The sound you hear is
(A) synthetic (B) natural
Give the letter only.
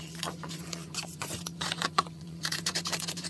A